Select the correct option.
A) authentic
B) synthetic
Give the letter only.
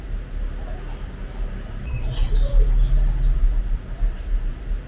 A